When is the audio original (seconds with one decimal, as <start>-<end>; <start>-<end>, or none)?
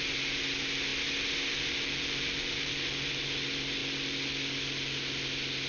0.0-5.7